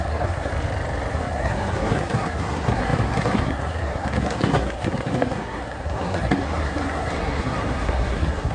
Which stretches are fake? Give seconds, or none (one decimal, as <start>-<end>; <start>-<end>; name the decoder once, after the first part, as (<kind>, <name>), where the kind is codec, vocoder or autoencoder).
0.0-0.5 (codec, SNAC); 1.1-8.5